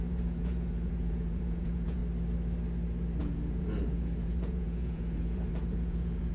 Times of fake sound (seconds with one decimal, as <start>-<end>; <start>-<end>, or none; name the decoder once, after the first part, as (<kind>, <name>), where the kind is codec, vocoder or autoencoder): 0.0-2.0 (vocoder, Vocos); 3.2-6.3